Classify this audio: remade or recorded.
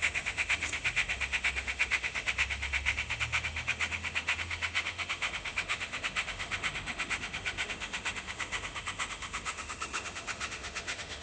remade